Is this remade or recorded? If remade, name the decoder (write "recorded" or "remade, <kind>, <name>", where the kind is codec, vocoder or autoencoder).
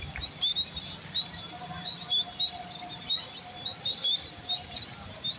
recorded